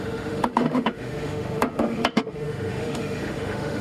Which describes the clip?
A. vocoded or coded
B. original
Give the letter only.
A